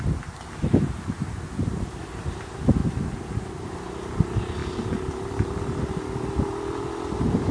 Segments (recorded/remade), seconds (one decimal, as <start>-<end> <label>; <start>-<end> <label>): 0.0-7.5 recorded